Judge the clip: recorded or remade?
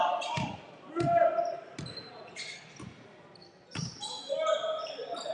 recorded